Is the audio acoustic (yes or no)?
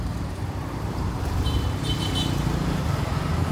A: no